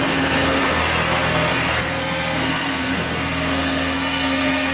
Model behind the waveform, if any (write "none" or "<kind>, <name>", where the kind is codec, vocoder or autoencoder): codec, SNAC